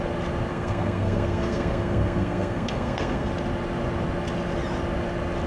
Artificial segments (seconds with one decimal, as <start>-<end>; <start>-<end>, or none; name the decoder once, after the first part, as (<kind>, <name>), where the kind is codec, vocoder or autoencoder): 0.5-3.3 (codec, SNAC)